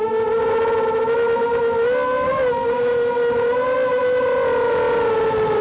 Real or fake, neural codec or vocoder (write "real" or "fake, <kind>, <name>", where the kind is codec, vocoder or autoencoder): real